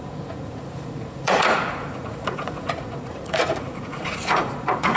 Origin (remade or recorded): remade